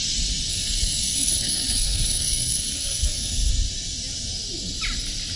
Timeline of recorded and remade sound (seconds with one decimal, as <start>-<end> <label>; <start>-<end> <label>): 0.0-0.5 recorded; 0.5-3.5 remade; 3.5-5.4 recorded